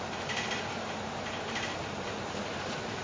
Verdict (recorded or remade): remade